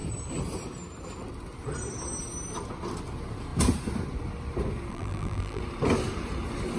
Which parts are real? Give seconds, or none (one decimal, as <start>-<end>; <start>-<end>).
0.0-4.9; 5.6-6.8